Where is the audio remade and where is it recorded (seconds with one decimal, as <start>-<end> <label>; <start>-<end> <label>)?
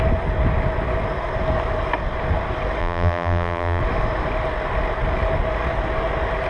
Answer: 0.0-2.8 recorded; 2.8-3.8 remade; 3.8-6.5 recorded